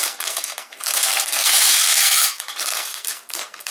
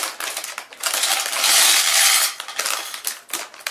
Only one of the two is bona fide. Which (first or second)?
second